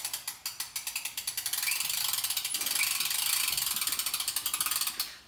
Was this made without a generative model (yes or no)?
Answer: yes